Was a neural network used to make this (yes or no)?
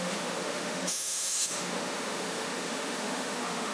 yes